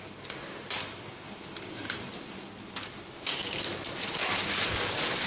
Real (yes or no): yes